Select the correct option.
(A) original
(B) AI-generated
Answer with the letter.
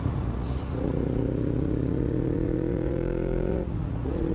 B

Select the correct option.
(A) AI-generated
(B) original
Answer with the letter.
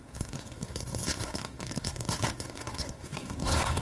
A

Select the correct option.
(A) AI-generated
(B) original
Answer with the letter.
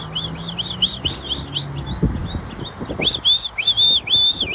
B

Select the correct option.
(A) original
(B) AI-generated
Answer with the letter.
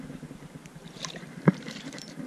B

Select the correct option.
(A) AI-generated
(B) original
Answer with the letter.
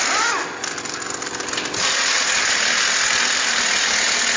B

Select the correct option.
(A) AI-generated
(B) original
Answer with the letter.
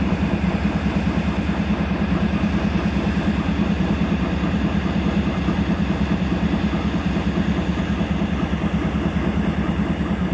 B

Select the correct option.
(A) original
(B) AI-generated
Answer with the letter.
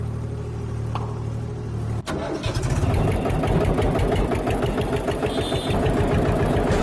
A